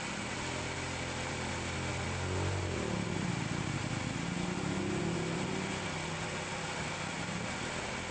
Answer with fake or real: real